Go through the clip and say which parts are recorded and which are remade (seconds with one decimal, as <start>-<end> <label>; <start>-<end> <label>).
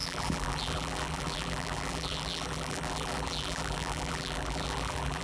0.0-5.2 remade